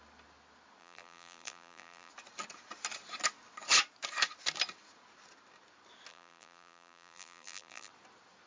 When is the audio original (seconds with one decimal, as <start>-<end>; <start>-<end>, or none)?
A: 0.0-0.8; 2.1-6.1; 7.9-8.5